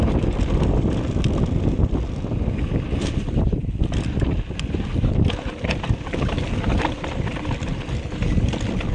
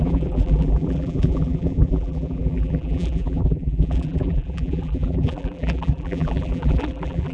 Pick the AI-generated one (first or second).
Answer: second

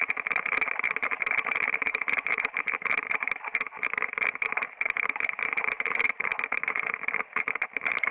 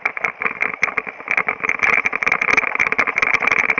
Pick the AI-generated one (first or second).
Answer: first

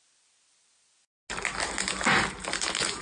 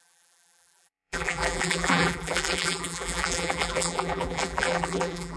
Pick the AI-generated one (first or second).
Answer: second